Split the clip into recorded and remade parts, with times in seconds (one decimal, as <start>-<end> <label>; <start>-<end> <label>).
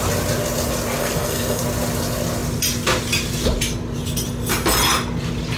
0.0-1.0 recorded; 1.0-1.6 remade; 1.6-5.6 recorded